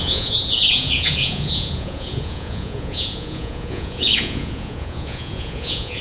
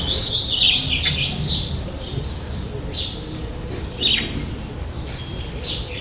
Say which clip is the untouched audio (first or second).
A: second